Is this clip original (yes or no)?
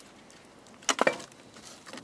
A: yes